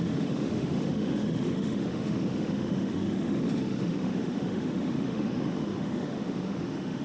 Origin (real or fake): fake